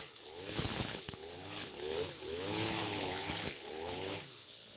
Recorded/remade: remade